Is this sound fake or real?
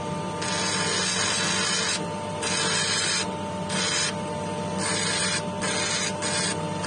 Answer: real